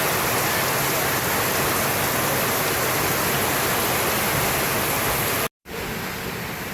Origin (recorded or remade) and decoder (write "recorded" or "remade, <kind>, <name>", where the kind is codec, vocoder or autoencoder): recorded